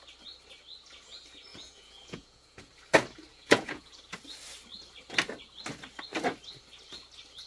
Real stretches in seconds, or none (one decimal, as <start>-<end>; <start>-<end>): 0.0-1.5; 2.7-3.3; 4.0-7.5